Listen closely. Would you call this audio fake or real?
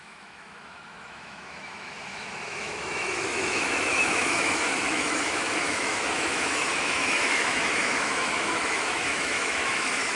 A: fake